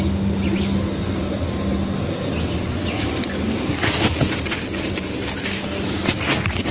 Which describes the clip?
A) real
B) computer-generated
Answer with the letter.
A